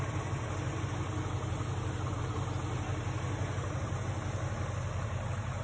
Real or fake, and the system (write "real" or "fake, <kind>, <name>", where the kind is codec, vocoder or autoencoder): real